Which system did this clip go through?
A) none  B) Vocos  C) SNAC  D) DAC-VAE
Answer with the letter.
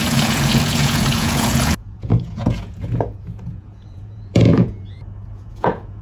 B